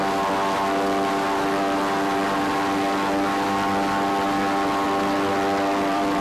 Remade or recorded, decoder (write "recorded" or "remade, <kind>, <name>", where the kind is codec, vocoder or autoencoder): remade, vocoder, BigVGAN v2